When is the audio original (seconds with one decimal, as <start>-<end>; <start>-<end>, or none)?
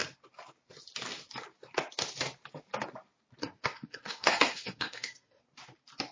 0.0-3.4; 5.4-6.1